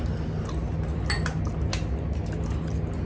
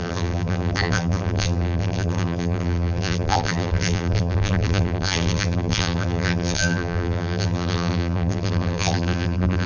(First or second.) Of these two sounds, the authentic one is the first